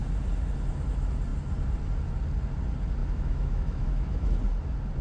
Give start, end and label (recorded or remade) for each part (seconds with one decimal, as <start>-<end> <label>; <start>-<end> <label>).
0.0-3.0 recorded; 3.0-4.4 remade; 4.4-5.0 recorded

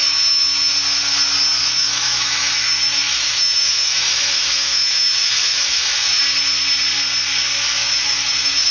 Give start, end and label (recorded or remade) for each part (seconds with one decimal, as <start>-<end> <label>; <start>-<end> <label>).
0.0-0.7 remade; 0.7-1.6 recorded; 1.6-6.2 remade; 6.2-7.8 recorded; 7.8-8.7 remade

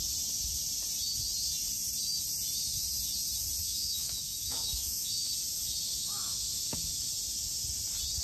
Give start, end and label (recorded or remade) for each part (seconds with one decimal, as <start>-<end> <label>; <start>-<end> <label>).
0.0-3.6 recorded; 3.6-5.3 remade; 5.3-5.9 recorded; 5.9-7.1 remade; 7.1-8.2 recorded